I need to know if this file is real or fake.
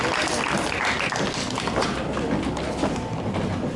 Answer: real